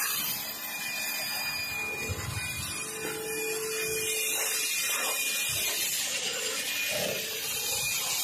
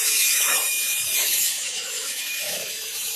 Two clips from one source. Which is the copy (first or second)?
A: second